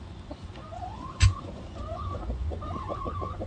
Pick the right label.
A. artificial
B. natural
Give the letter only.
A